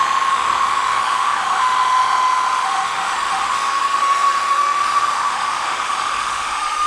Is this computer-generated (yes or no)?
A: yes